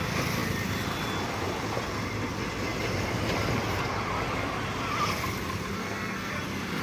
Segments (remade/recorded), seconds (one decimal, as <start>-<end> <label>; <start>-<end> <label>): 0.0-5.8 recorded; 5.8-6.3 remade; 6.3-6.8 recorded